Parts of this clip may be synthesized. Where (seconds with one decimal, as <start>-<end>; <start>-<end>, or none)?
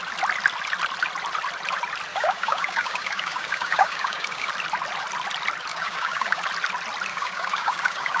2.1-4.5; 5.7-6.4; 7.1-8.2